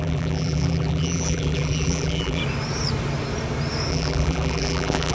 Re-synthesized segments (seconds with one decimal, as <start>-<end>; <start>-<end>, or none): 0.0-2.4; 3.9-5.1